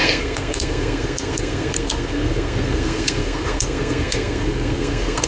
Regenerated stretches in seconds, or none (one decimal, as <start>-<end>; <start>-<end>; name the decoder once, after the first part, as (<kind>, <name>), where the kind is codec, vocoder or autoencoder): 0.0-5.3 (codec, SNAC)